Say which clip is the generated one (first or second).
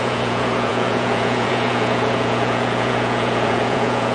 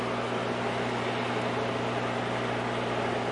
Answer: first